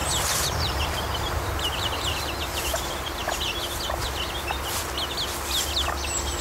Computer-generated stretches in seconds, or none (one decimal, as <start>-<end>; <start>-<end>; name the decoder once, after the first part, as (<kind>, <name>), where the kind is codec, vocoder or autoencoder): 0.0-2.7 (vocoder, BigVGAN v2)